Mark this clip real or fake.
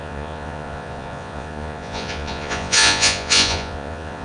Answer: fake